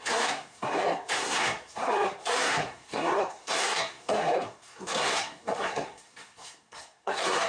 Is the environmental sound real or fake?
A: fake